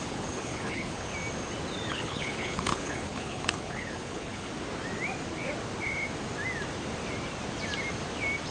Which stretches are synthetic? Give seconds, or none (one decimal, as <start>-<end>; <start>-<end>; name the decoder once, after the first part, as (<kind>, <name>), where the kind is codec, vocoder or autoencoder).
0.0-1.1 (codec, HILCodec); 1.9-4.5